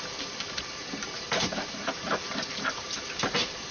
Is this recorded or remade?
recorded